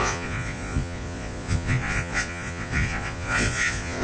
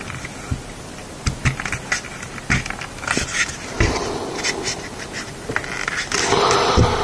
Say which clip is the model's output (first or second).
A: first